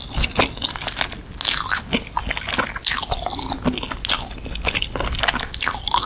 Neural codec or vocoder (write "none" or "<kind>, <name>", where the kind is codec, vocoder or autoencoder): none